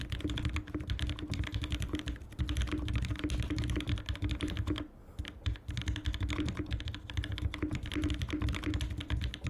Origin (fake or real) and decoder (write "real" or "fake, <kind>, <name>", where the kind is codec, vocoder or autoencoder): real